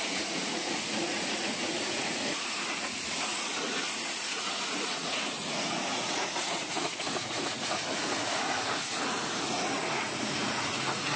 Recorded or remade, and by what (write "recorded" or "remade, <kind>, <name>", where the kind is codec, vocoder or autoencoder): remade, vocoder, Vocos